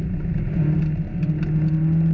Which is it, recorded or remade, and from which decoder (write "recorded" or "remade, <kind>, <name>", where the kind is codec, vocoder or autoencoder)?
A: recorded